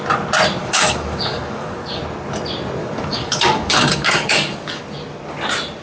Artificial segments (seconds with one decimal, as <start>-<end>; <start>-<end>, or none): 0.6-2.0; 2.8-4.8